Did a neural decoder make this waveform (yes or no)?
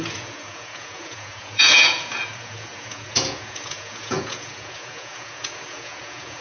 yes